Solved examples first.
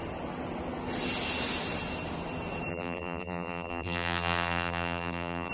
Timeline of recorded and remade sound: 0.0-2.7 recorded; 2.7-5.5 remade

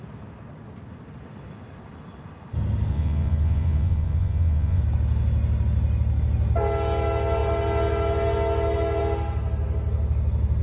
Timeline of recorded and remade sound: 0.0-2.9 recorded; 2.9-4.8 remade; 4.8-10.6 recorded